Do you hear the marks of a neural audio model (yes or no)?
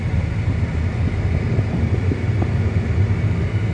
no